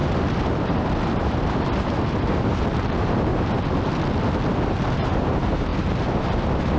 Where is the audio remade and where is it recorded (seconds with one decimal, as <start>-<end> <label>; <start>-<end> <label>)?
0.0-3.3 remade; 3.3-4.9 recorded; 4.9-6.8 remade